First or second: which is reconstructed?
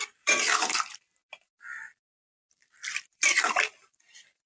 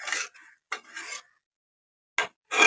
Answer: first